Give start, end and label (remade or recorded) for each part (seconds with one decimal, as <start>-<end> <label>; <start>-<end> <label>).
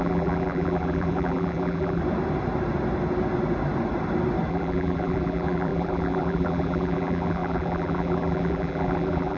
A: 0.0-2.0 remade; 2.0-4.5 recorded; 4.5-9.4 remade